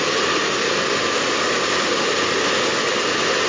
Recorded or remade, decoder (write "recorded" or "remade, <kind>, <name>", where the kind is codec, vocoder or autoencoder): recorded